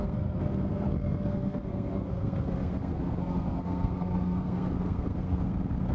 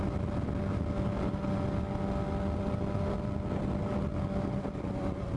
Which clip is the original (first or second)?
second